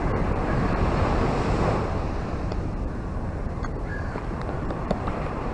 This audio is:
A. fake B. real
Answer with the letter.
A